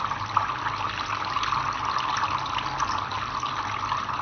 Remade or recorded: recorded